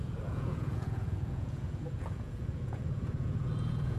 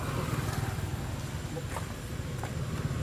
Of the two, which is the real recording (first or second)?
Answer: second